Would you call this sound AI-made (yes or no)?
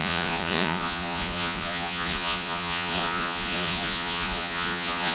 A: yes